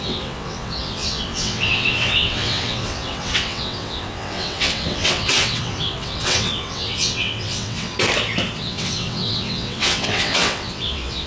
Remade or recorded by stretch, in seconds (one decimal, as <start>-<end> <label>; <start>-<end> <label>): 0.0-7.9 remade; 7.9-8.6 recorded; 8.6-11.3 remade